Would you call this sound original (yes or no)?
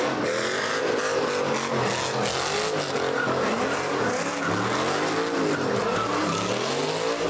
yes